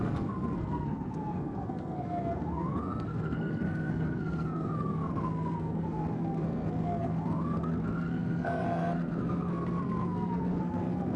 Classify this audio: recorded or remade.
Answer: remade